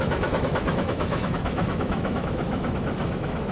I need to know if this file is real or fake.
fake